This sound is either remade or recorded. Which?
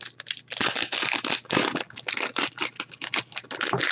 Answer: recorded